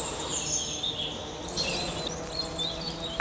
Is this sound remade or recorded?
recorded